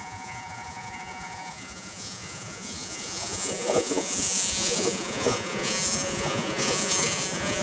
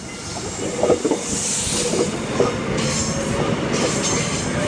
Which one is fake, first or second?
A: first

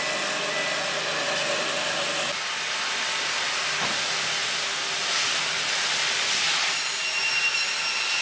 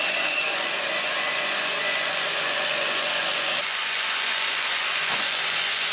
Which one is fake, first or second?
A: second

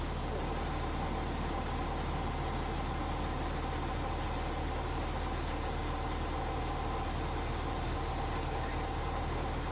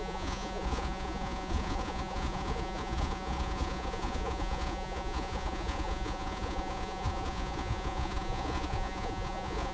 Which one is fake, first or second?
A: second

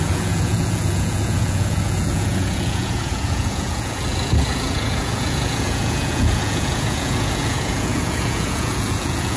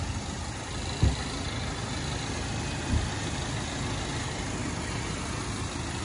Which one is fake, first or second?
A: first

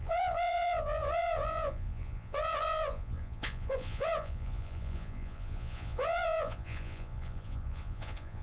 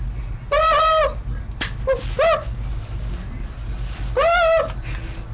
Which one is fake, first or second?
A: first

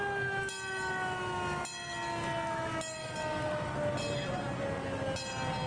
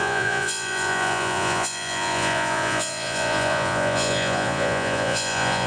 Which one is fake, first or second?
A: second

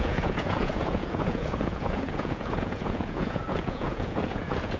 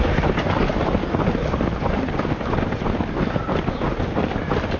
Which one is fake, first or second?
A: first